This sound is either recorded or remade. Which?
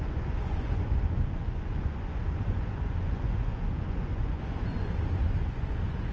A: remade